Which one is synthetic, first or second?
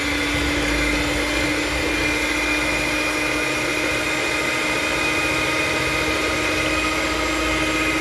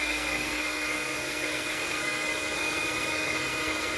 second